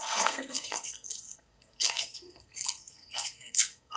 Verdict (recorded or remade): remade